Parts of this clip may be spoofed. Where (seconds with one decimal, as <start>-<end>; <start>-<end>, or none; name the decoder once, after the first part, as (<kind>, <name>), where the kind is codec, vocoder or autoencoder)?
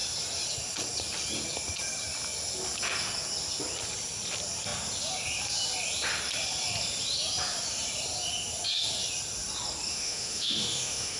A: 9.9-11.2 (autoencoder, DAC-VAE)